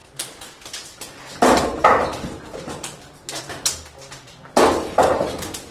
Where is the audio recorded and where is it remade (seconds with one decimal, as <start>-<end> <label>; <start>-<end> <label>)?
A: 0.0-5.7 recorded